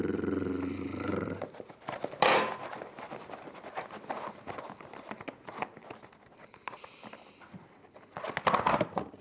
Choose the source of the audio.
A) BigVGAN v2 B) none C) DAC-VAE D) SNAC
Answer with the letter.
B